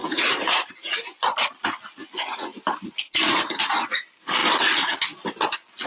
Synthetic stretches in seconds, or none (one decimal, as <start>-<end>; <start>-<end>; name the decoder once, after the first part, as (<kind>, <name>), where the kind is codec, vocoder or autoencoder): 0.0-0.7 (vocoder, BigVGAN v2); 2.5-3.6